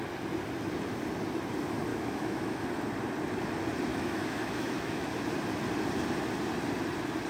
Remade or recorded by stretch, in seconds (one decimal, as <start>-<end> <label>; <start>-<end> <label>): 0.0-1.9 recorded; 1.9-2.7 remade; 2.7-3.9 recorded; 3.9-5.1 remade; 5.1-7.3 recorded